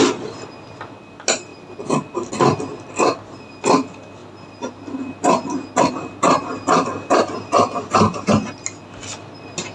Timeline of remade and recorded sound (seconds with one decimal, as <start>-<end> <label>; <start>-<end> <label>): 0.0-1.5 recorded; 1.5-2.3 remade; 2.3-9.7 recorded